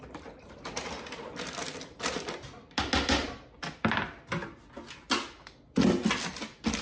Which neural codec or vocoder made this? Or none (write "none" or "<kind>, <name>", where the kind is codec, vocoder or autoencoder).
none